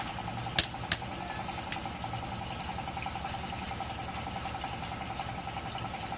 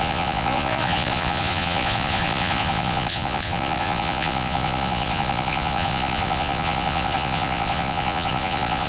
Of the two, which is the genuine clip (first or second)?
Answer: first